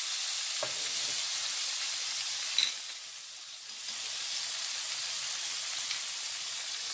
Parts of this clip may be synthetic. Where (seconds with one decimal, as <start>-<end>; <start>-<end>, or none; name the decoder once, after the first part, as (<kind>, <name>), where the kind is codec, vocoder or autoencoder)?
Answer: 1.4-2.9 (vocoder, BigVGAN v2)